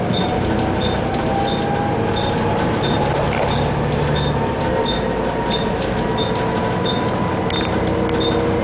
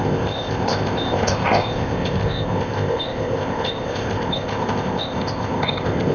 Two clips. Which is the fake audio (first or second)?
second